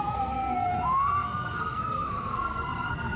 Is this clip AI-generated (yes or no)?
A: yes